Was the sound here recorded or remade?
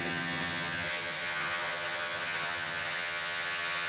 remade